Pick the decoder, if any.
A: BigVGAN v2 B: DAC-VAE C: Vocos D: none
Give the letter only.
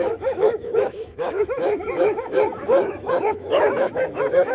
B